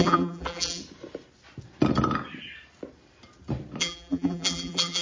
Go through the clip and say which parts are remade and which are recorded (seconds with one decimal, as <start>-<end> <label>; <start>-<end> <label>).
0.0-0.8 remade; 0.8-3.8 recorded; 3.8-5.0 remade